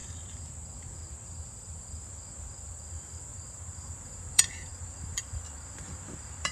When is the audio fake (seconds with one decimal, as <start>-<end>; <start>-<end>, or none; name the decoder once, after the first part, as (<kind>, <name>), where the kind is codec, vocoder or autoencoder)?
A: 2.7-6.5 (vocoder, BigVGAN v2)